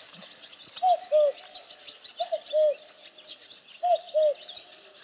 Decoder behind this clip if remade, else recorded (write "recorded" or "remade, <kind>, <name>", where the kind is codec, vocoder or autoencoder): recorded